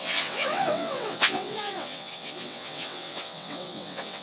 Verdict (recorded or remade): remade